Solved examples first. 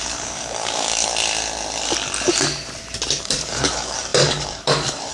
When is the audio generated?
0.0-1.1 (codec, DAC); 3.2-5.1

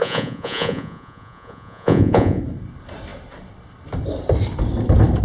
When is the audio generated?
0.0-2.4 (vocoder, Vocos)

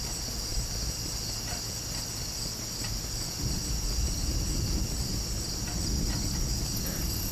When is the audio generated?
none

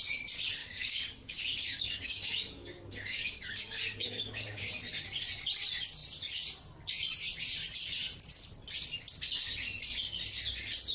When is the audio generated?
0.6-4.7 (codec, DAC)